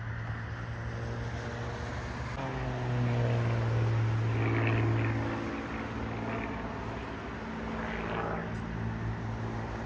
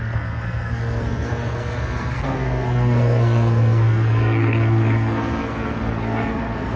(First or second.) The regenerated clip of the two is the second